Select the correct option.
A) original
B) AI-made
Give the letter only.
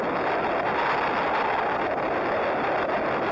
A